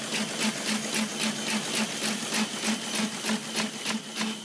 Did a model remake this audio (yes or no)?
no